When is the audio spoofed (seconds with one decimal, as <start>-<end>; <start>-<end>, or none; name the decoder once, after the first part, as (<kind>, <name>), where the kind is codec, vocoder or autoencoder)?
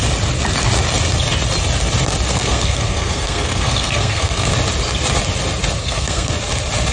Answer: 2.3-4.5 (codec, SNAC); 5.8-6.3